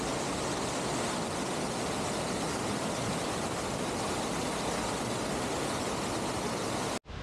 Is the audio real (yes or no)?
yes